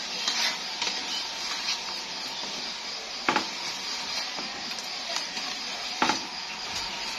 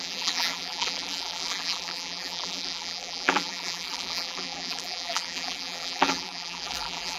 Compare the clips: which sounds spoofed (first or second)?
second